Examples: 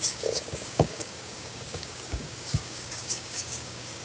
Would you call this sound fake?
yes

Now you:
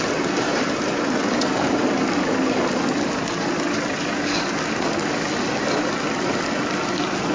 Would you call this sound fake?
no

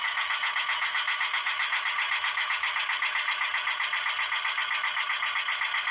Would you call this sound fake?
no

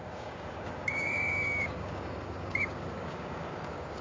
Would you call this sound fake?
yes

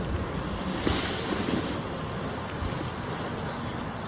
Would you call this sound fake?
no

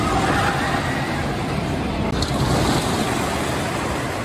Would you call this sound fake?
no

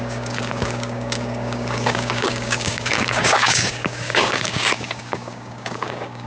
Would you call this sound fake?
yes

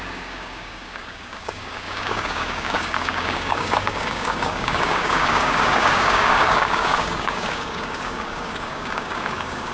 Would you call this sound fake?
yes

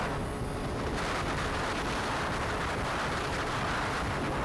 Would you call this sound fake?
no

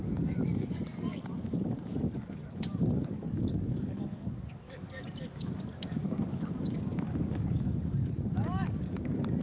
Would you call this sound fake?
yes